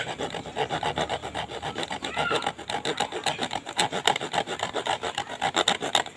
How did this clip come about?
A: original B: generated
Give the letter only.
A